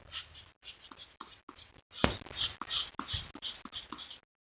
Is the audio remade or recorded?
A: recorded